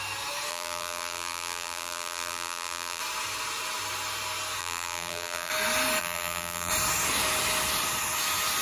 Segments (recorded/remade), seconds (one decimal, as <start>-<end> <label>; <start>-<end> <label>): 0.0-0.5 recorded; 0.5-3.0 remade; 3.0-4.6 recorded; 4.6-5.5 remade; 5.5-6.0 recorded; 6.0-6.7 remade; 6.7-8.6 recorded